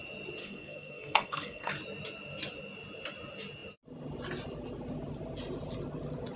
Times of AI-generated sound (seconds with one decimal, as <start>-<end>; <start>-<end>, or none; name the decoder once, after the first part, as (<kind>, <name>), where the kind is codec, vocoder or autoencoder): 0.4-1.7 (codec, SNAC)